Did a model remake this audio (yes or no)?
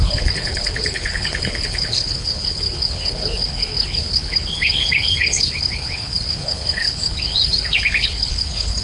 yes